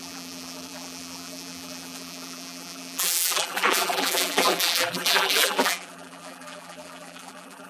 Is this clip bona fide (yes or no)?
no